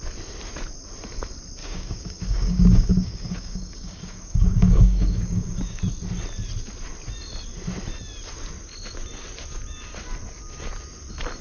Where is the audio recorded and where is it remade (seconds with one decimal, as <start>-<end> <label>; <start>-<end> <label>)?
0.0-1.6 recorded; 1.6-5.8 remade; 5.8-11.4 recorded